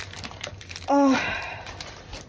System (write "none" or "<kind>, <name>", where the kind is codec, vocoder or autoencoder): vocoder, BigVGAN v2